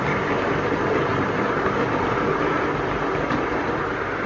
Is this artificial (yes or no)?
no